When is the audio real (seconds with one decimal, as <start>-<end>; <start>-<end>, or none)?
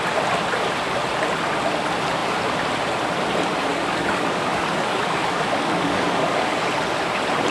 0.0-3.7; 6.7-7.5